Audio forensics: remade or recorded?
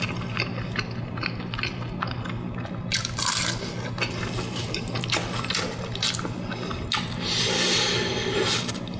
recorded